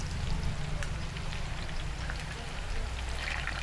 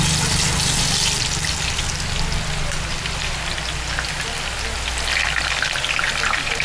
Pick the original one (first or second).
second